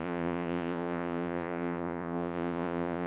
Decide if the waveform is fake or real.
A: fake